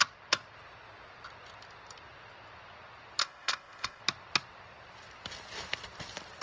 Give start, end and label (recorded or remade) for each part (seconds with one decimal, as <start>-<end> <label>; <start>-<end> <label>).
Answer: 0.0-3.2 recorded; 3.2-4.0 remade; 4.0-6.4 recorded